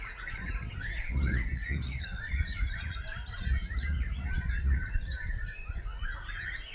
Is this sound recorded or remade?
remade